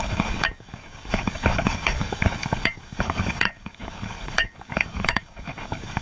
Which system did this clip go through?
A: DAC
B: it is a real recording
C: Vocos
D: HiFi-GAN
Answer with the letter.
A